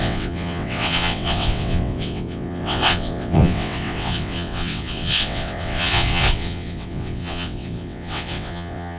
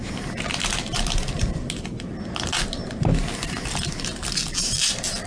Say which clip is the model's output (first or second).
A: first